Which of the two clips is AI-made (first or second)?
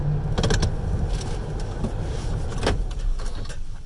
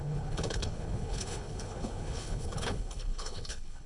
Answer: second